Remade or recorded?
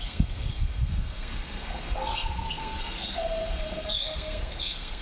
remade